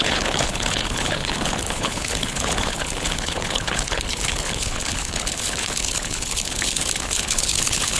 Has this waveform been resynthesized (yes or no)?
yes